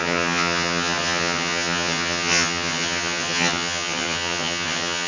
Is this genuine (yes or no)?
no